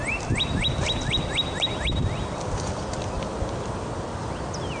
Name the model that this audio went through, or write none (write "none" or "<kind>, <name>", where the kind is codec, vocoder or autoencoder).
none